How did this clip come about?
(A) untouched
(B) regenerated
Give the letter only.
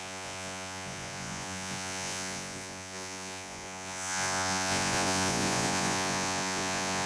B